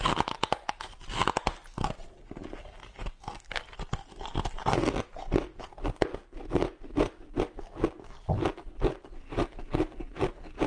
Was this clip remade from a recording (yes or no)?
no